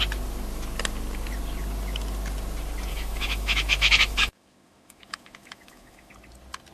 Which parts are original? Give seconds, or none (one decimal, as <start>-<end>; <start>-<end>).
0.0-2.9; 6.1-6.7